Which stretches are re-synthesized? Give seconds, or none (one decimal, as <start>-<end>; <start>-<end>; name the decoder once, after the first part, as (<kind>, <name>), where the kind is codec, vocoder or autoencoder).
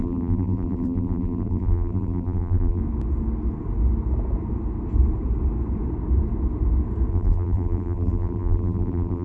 0.0-2.8 (vocoder, BigVGAN v2); 7.1-9.2